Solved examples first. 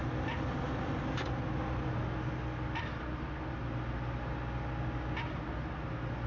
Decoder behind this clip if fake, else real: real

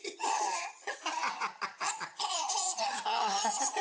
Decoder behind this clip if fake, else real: fake, vocoder, HiFi-GAN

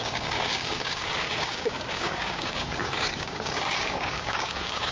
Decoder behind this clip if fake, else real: fake, codec, DAC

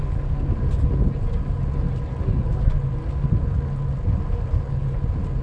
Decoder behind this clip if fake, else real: real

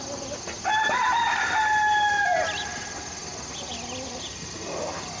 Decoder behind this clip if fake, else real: real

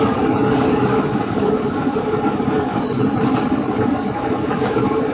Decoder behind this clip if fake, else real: fake, codec, DAC